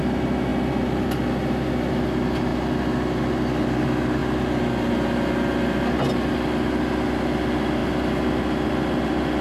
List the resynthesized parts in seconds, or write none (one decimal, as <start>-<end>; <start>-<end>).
none